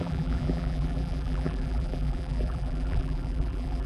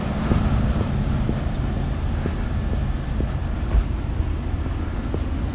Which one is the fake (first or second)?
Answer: first